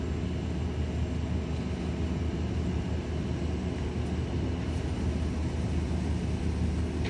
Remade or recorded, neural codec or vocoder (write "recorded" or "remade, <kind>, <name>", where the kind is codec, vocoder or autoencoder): recorded